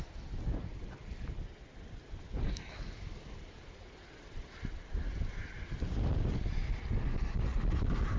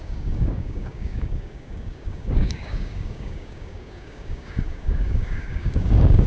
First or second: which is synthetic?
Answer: second